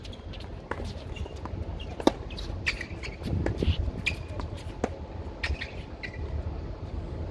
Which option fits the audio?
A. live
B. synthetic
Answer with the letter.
A